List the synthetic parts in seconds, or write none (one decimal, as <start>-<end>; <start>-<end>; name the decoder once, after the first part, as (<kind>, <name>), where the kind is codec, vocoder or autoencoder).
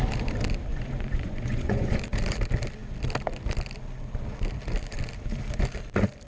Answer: 0.7-2.0 (vocoder, Vocos)